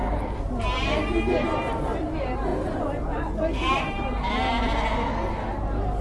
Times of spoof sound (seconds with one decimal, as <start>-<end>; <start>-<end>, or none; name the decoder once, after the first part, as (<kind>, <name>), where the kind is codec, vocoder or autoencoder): 0.0-1.6 (vocoder, BigVGAN v2)

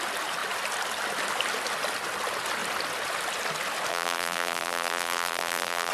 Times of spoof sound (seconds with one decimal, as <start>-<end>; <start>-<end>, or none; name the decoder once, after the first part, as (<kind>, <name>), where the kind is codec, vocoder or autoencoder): 3.9-5.9 (vocoder, BigVGAN v2)

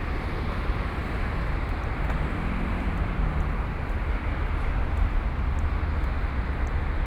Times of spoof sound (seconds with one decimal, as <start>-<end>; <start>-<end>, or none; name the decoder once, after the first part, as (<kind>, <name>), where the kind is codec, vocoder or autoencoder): 1.0-4.0 (vocoder, BigVGAN v2)

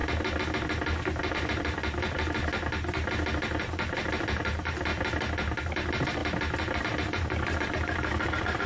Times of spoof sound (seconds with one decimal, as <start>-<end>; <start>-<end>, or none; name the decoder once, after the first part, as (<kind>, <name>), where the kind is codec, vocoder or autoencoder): 1.3-2.4 (vocoder, BigVGAN v2); 3.6-4.9; 5.6-6.2; 6.8-8.7

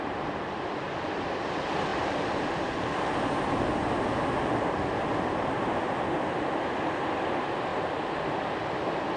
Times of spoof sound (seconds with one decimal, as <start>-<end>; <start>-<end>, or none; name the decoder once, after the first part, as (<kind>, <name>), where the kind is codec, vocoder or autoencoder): 1.9-3.1 (vocoder, BigVGAN v2)

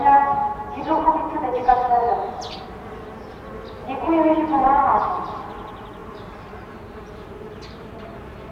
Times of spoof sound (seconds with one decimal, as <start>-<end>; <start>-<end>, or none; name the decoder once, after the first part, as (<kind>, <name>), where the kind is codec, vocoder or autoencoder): 0.4-1.4 (vocoder, BigVGAN v2); 1.8-2.8; 6.0-8.1